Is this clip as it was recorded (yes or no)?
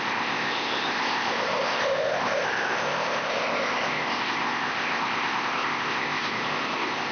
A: no